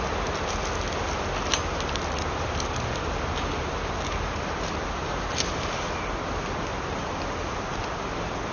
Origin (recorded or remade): recorded